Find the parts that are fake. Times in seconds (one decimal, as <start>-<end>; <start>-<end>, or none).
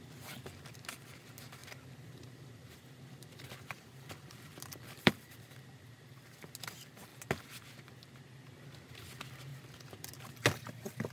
1.6-5.6; 9.5-10.1